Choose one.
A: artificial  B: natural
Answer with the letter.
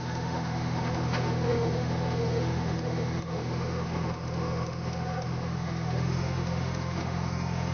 A